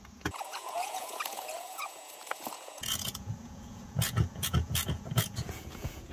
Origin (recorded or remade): remade